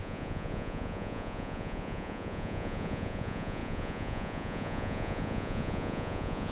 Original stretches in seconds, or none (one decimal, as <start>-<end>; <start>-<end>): none